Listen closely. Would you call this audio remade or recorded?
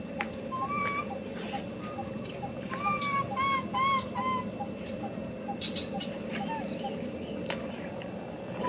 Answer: recorded